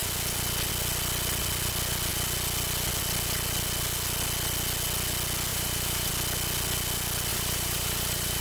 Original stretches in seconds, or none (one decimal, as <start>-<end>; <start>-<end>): 0.0-5.5; 6.1-7.3